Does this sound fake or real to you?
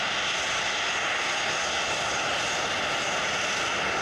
real